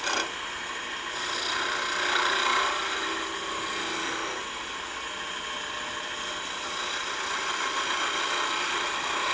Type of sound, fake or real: real